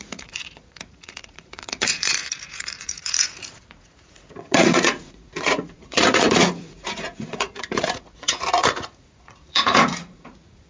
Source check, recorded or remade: remade